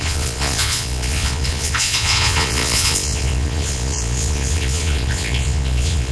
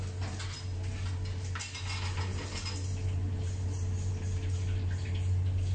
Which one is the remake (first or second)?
first